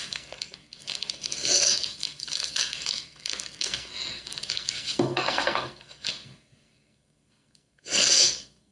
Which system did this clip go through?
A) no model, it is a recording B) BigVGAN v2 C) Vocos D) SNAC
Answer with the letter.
D